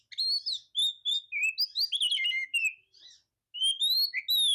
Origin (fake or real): real